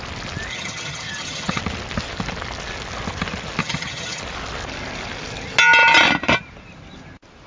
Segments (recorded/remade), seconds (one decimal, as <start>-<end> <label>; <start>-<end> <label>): 0.0-0.5 recorded; 0.5-1.6 remade; 1.6-3.6 recorded; 3.6-4.2 remade; 4.2-7.5 recorded